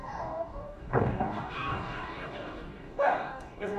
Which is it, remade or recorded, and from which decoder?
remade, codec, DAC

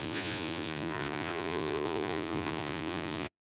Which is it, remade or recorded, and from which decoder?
remade, vocoder, Vocos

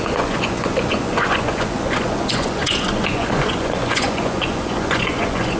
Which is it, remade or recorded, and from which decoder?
remade, vocoder, Vocos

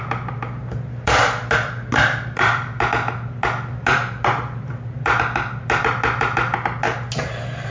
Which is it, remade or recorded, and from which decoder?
recorded